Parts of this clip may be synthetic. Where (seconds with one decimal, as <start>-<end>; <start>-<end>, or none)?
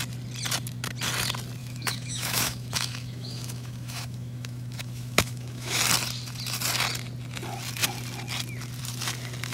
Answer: 1.6-5.8